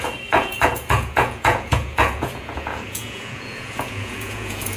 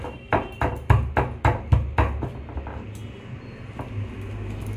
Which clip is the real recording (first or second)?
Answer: second